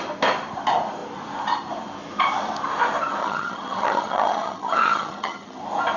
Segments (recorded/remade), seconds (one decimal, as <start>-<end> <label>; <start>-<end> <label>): 0.0-3.2 recorded; 3.2-5.6 remade; 5.6-6.0 recorded